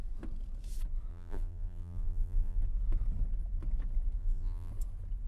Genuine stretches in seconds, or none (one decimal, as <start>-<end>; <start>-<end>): 0.0-1.1; 2.6-4.2; 4.7-5.3